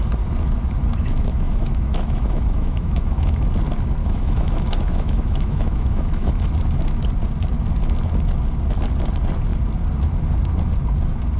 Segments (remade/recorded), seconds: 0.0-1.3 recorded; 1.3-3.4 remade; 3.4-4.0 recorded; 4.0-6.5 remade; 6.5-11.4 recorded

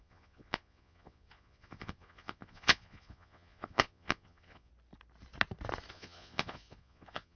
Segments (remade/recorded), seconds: 0.0-4.7 remade; 4.7-5.9 recorded; 5.9-7.4 remade